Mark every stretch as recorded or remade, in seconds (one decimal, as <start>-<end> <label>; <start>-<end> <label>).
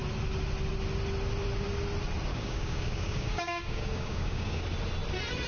0.0-2.3 recorded; 2.3-4.6 remade; 4.6-5.5 recorded